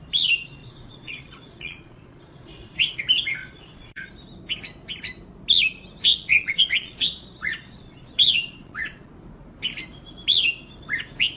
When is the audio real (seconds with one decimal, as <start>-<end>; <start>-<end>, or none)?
0.0-0.6; 3.0-3.4; 4.1-6.1; 9.1-11.4